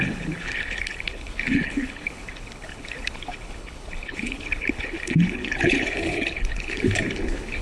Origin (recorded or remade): remade